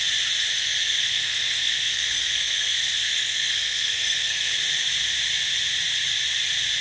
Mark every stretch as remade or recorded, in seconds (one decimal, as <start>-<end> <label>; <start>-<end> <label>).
0.0-0.5 recorded; 0.5-4.5 remade; 4.5-6.8 recorded